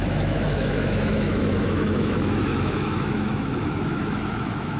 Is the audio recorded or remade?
remade